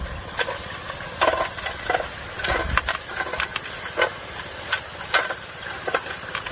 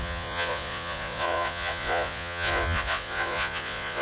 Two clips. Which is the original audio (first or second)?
first